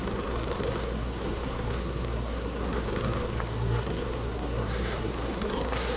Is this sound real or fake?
fake